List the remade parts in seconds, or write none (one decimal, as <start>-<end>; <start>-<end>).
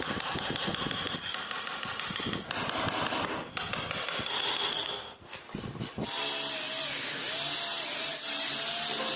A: 4.7-5.4